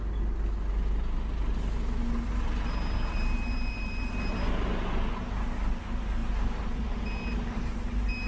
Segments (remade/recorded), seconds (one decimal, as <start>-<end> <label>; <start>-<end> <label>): 0.0-3.1 recorded; 3.1-4.5 remade; 4.5-6.2 recorded; 6.2-6.9 remade; 6.9-8.3 recorded